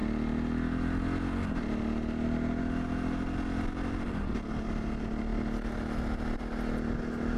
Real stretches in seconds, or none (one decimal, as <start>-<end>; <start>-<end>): 0.0-7.4